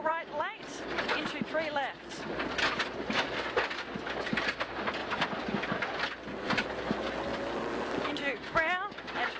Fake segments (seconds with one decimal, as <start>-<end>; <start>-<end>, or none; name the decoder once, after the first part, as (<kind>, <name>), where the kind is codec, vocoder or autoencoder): 5.0-6.0 (vocoder, BigVGAN v2); 7.3-8.1